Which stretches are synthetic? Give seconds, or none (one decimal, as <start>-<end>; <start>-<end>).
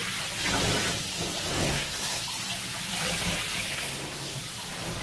1.5-2.2; 3.7-4.4